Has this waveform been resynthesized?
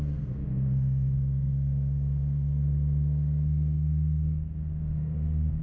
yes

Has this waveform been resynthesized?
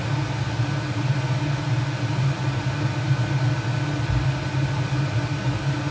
no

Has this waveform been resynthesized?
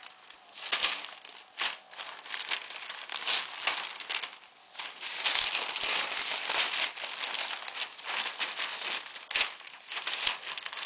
no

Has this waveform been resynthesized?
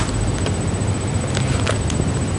no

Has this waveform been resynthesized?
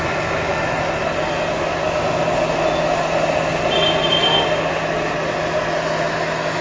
no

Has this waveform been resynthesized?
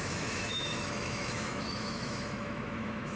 yes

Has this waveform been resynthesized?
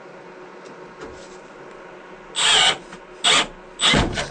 no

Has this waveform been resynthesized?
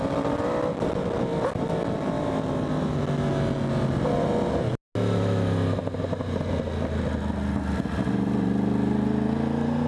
no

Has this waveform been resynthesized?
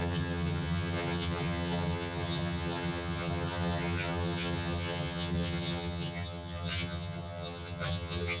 yes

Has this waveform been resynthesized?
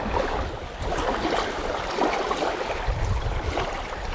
no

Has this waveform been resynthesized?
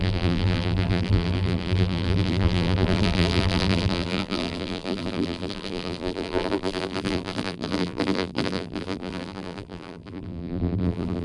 yes